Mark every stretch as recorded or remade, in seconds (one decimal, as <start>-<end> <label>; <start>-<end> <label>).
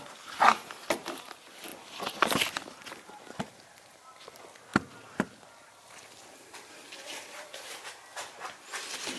0.0-4.7 remade; 4.7-5.7 recorded; 5.7-8.1 remade; 8.1-9.2 recorded